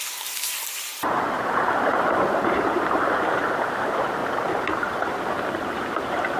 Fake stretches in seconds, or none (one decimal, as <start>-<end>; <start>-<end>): 0.0-4.2; 5.3-6.4